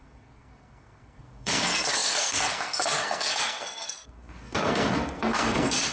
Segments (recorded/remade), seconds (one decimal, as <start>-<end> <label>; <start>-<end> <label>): 0.0-5.9 remade